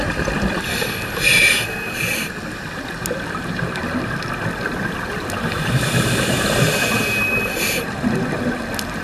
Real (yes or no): yes